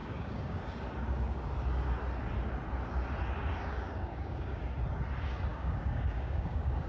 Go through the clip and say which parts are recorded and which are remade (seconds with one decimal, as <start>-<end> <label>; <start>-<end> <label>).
0.0-0.6 remade; 0.6-3.6 recorded; 3.6-4.6 remade; 4.6-5.5 recorded; 5.5-6.9 remade